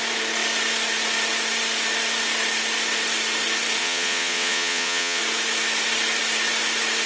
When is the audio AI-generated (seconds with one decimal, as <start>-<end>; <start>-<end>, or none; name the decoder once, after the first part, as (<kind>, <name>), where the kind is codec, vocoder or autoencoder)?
3.8-5.2 (vocoder, Vocos)